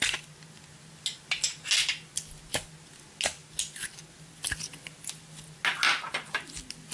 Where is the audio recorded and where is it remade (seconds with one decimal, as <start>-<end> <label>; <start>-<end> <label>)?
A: 0.0-6.9 recorded